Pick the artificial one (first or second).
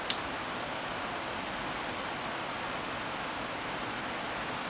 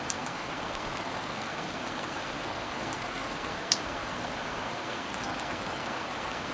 second